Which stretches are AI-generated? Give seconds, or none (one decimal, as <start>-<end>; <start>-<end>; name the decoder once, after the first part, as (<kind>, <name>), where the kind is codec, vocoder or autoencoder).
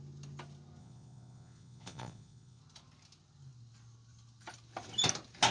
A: 0.8-2.6 (vocoder, Vocos)